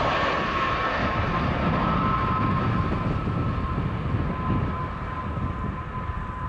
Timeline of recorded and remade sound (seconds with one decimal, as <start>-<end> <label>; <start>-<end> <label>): 0.0-6.5 recorded